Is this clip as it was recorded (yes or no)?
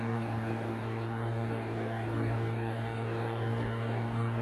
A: no